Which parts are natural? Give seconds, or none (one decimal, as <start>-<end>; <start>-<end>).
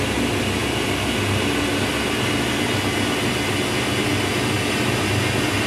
0.0-5.7